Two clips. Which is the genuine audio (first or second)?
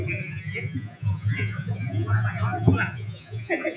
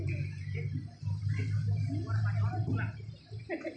second